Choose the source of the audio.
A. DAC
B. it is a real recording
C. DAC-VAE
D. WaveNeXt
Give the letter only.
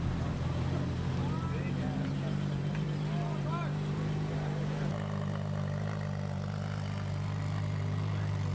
B